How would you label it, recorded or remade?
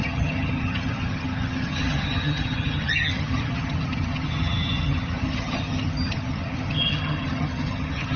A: remade